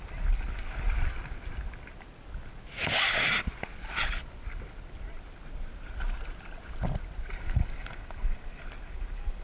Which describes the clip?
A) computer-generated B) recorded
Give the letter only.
B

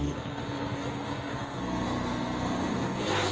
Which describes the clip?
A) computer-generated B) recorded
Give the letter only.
A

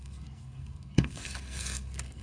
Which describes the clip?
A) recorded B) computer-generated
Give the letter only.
B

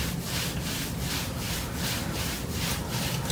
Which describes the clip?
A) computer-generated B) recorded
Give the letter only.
B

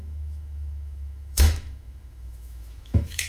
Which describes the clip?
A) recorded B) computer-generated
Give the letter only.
B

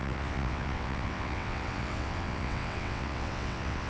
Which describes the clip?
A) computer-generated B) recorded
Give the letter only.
A